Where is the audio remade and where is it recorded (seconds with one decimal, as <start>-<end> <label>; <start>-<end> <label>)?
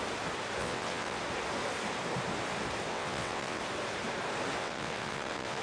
0.0-0.6 recorded; 0.6-1.2 remade; 1.2-2.9 recorded; 2.9-3.6 remade; 3.6-4.6 recorded; 4.6-5.6 remade